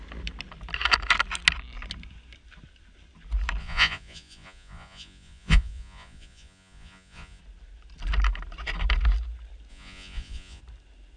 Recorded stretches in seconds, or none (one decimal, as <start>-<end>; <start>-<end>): 0.0-3.6; 7.4-9.7; 10.6-11.2

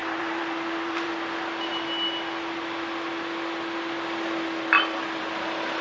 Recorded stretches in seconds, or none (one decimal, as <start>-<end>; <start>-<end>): 1.1-5.8

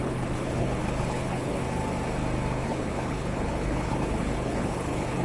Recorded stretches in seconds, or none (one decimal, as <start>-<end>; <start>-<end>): 1.6-2.5